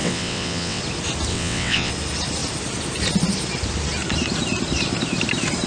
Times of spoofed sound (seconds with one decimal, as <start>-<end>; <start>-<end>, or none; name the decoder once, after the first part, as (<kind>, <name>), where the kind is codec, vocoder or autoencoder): 0.0-0.8 (vocoder, WaveNeXt); 1.3-1.9